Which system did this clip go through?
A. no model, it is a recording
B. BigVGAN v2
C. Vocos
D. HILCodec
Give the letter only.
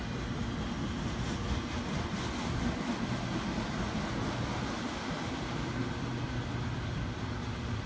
A